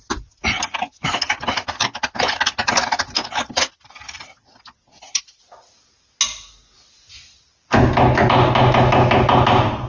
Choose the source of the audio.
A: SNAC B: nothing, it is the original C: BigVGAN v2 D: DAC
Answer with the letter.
B